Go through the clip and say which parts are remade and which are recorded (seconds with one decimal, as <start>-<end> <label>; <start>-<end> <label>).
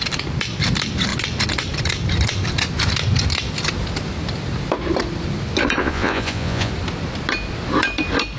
0.0-5.8 recorded; 5.8-6.7 remade; 6.7-8.4 recorded